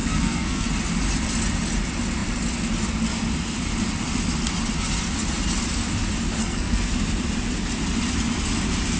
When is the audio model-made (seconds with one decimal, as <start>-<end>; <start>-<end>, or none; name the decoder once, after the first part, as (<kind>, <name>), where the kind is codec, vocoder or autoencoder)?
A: 0.0-0.7 (codec, SNAC); 6.4-6.9